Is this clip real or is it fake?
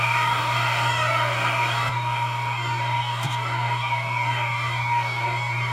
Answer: fake